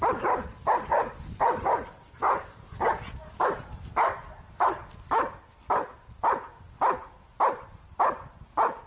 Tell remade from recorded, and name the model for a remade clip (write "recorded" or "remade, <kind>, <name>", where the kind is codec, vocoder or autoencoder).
recorded